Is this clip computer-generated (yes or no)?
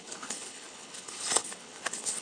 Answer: yes